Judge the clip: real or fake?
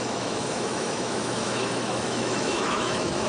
fake